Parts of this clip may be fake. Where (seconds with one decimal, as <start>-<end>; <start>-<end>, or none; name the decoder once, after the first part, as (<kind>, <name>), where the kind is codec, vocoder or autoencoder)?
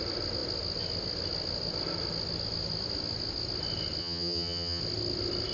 4.0-4.8 (vocoder, HiFi-GAN)